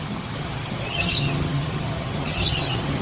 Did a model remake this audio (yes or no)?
yes